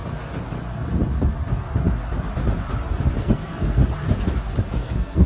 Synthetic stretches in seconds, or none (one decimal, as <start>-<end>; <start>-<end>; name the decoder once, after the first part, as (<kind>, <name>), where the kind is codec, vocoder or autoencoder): 3.2-3.8 (codec, SNAC); 4.7-5.3